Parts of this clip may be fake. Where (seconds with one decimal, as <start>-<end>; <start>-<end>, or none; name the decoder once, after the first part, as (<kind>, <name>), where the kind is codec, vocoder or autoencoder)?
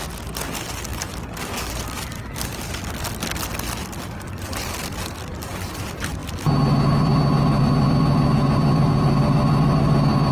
none